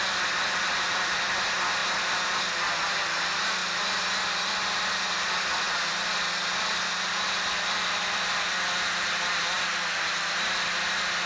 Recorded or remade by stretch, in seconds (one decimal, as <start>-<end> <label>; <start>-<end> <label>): 0.0-3.6 recorded; 3.6-8.6 remade; 8.6-11.3 recorded